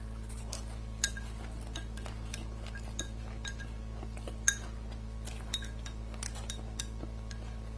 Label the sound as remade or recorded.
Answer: recorded